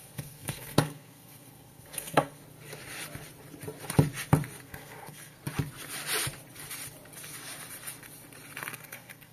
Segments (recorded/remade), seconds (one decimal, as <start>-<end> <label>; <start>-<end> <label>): 0.0-2.4 remade; 2.4-4.6 recorded; 4.6-5.4 remade; 5.4-8.7 recorded; 8.7-9.3 remade